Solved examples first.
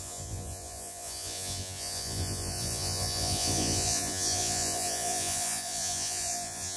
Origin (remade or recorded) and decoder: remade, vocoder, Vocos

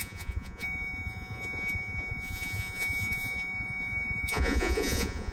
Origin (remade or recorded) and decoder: remade, vocoder, Vocos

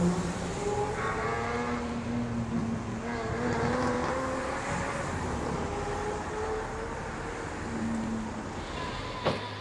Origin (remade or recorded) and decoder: recorded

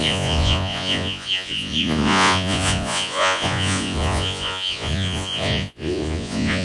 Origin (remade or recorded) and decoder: remade, vocoder, Vocos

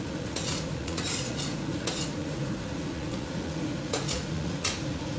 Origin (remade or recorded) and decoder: remade, vocoder, Vocos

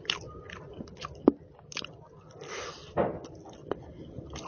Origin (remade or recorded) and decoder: recorded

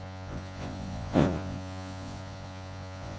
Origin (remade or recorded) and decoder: remade, vocoder, Vocos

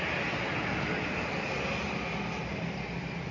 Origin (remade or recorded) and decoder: recorded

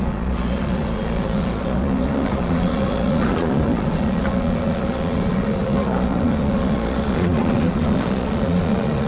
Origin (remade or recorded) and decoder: remade, vocoder, Vocos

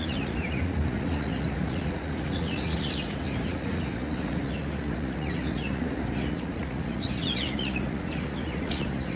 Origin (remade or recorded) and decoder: remade, vocoder, Vocos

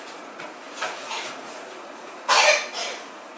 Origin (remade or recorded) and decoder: remade, vocoder, Vocos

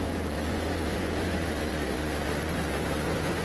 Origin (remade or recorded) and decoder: remade, vocoder, Vocos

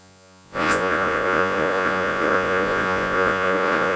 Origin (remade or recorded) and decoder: remade, vocoder, Vocos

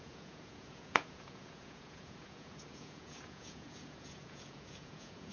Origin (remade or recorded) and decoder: remade, vocoder, Vocos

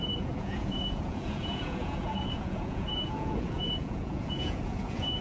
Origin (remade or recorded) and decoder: remade, vocoder, Vocos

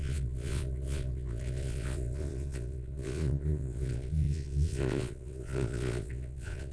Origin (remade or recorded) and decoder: remade, vocoder, Vocos